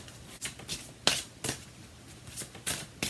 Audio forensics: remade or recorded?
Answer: recorded